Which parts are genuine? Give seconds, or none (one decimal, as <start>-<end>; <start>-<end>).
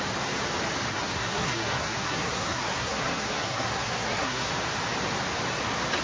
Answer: 0.0-0.9; 4.5-6.0